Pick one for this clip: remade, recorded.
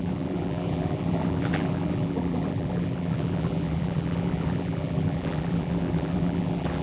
remade